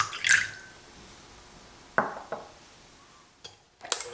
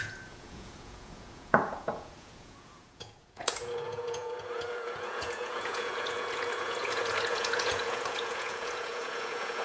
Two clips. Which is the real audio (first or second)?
first